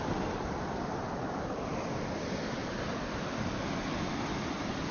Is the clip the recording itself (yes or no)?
yes